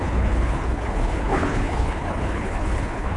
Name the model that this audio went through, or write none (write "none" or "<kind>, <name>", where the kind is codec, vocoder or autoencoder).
codec, HILCodec